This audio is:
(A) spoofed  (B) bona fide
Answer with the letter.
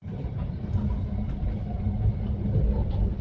B